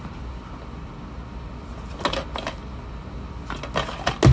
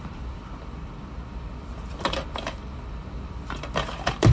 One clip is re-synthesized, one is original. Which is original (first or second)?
first